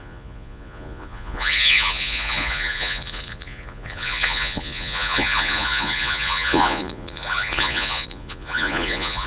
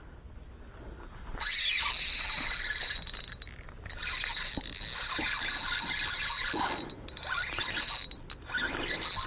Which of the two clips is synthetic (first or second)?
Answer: first